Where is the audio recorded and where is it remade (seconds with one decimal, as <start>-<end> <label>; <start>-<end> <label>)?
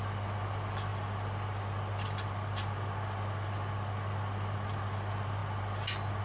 0.0-6.2 recorded